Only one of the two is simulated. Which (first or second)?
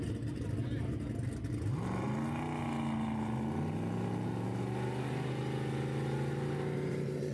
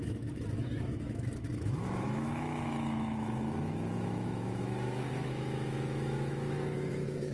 second